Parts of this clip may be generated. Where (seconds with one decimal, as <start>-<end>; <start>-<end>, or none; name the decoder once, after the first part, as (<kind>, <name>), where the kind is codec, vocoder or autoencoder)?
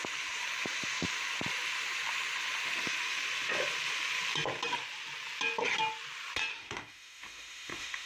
6.5-8.1 (autoencoder, DAC-VAE)